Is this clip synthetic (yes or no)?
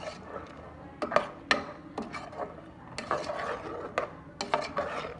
no